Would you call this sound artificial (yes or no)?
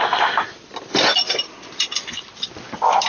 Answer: no